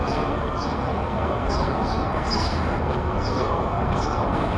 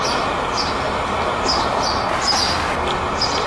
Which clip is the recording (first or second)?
second